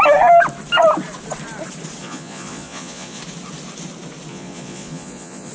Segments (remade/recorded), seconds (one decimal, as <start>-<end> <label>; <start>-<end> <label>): 0.0-2.0 recorded; 2.0-3.2 remade; 3.2-4.3 recorded; 4.3-5.5 remade